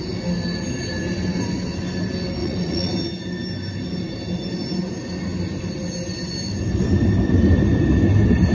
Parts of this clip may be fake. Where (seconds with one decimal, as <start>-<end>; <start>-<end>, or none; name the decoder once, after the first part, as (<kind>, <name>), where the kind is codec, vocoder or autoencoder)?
2.4-2.9 (vocoder, Vocos)